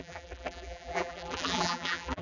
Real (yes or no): no